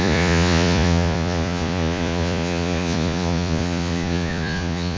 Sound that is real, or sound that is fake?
fake